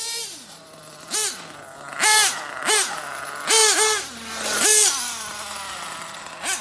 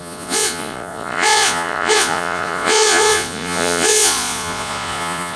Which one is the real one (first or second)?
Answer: first